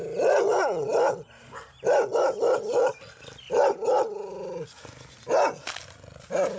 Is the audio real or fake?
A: real